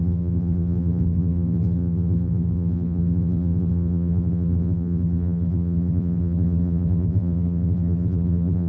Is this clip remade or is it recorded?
remade